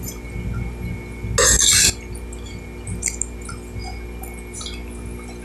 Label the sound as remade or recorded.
recorded